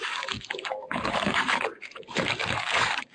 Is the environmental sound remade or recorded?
remade